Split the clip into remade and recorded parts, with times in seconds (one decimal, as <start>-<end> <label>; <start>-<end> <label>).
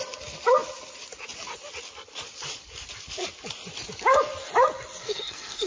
0.0-5.0 recorded; 5.0-5.7 remade